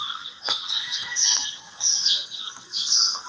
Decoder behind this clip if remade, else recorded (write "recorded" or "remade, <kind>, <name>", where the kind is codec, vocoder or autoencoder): remade, codec, SNAC